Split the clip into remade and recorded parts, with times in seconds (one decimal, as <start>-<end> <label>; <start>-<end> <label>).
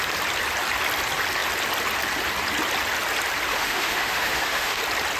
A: 0.0-3.5 recorded; 3.5-4.8 remade; 4.8-5.2 recorded